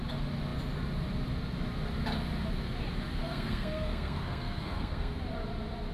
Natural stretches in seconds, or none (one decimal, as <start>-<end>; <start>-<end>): 0.0-3.2; 5.2-5.9